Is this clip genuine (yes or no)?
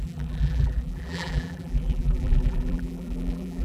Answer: no